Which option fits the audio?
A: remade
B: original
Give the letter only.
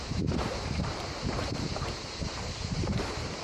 A